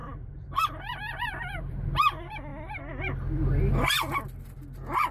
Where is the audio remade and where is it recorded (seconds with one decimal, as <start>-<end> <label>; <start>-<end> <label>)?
0.0-1.9 remade; 1.9-5.1 recorded